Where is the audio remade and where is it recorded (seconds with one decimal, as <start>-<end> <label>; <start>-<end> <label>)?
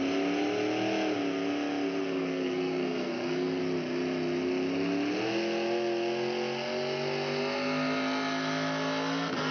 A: 0.0-2.0 recorded; 2.0-3.6 remade; 3.6-9.5 recorded